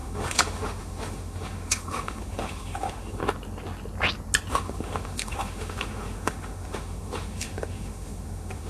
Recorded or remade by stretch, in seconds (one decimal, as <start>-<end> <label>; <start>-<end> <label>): 0.0-3.2 remade; 3.2-4.5 recorded; 4.5-8.7 remade